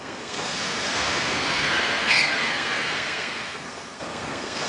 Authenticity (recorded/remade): remade